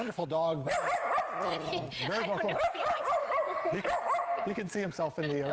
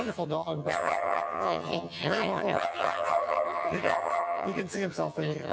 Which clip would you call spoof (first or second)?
second